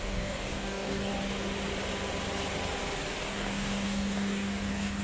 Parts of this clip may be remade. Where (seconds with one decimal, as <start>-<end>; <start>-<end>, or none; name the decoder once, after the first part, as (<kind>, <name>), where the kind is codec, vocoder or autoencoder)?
0.0-1.1 (codec, DAC); 3.3-5.0